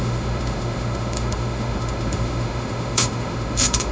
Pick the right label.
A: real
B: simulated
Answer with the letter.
B